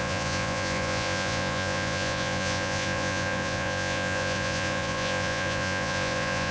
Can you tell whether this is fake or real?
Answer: fake